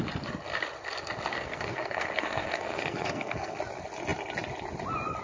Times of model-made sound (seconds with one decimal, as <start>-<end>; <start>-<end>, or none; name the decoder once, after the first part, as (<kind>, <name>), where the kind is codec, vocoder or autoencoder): 1.3-3.6 (codec, SNAC)